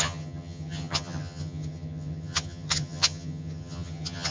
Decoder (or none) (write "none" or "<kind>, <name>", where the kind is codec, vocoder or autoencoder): vocoder, HiFi-GAN